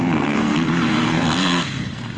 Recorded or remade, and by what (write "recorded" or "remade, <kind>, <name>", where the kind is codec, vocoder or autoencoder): remade, codec, SNAC